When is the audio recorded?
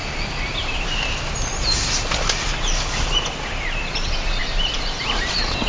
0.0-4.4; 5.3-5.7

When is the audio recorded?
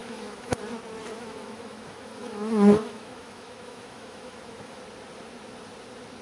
0.6-1.1; 4.8-6.2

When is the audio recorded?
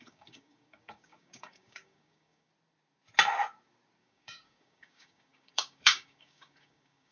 2.5-4.0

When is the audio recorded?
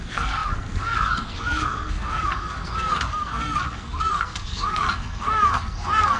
none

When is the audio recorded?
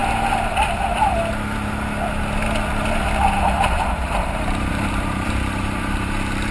0.0-3.3